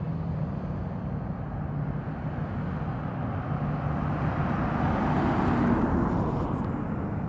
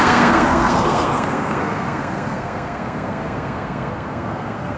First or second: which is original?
first